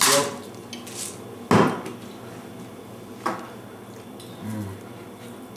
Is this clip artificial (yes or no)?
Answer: no